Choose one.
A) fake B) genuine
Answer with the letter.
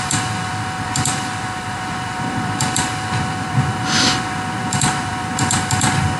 A